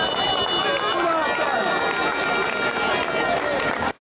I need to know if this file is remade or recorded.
recorded